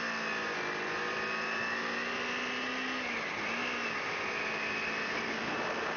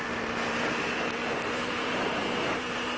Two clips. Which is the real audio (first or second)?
first